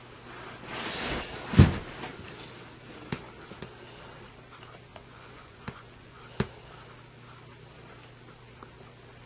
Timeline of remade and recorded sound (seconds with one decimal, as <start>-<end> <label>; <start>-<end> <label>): 0.0-4.9 recorded; 4.9-6.2 remade; 6.2-9.3 recorded